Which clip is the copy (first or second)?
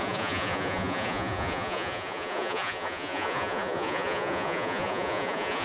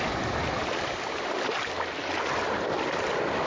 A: first